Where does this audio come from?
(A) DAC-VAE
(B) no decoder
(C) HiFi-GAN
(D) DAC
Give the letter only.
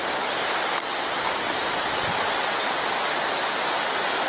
B